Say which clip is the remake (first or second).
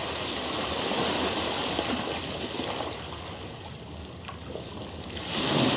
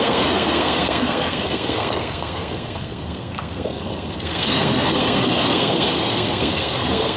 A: second